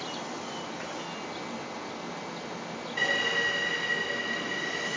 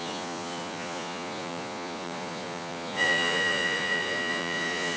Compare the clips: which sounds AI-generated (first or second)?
second